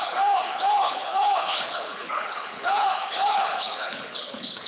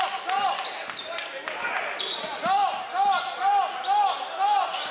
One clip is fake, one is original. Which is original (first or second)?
second